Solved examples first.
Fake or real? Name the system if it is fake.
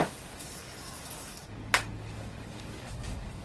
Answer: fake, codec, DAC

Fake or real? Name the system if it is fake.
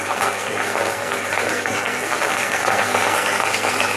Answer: fake, codec, SNAC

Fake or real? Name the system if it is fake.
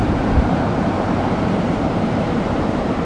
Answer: fake, vocoder, BigVGAN v2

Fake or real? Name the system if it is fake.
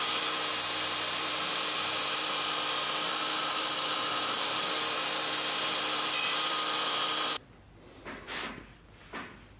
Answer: fake, vocoder, BigVGAN v2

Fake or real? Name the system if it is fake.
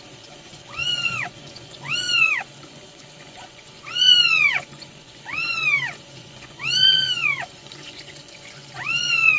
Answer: fake, vocoder, Vocos